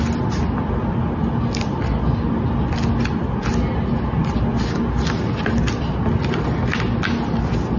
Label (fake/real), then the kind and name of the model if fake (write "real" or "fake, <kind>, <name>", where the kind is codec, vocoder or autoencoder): real